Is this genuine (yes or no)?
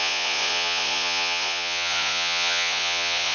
no